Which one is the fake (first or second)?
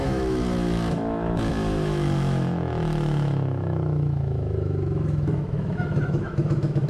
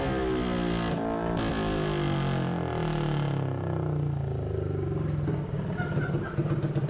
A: first